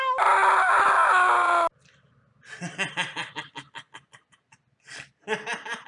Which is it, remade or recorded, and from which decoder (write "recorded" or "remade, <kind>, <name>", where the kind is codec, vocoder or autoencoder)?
recorded